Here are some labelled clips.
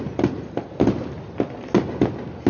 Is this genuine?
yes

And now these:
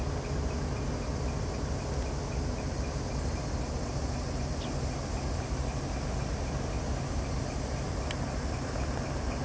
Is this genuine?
yes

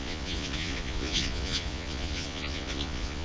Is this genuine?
no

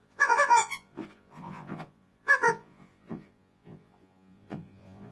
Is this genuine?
no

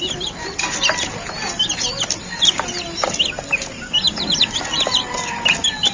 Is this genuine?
yes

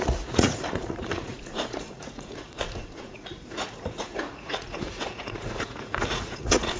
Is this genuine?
no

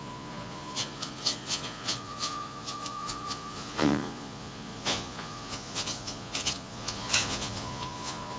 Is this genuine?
no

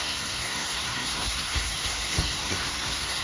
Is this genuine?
no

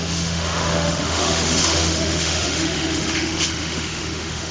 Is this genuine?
no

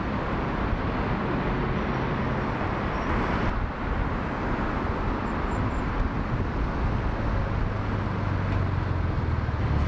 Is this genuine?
yes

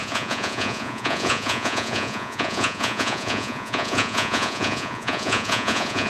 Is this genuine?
no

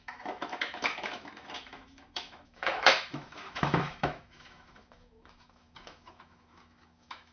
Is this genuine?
no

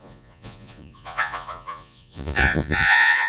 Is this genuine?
no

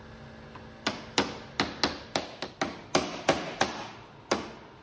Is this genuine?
yes